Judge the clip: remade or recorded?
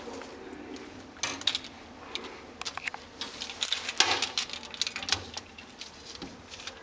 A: recorded